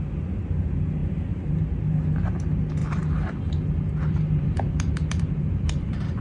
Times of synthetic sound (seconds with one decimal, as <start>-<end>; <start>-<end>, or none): 1.0-1.6; 2.8-6.2